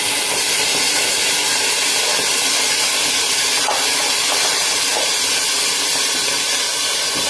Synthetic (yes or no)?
no